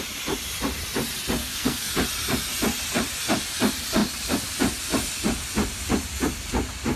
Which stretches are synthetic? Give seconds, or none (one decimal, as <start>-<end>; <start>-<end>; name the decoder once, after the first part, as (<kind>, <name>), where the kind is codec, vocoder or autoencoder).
1.4-1.9 (codec, SNAC)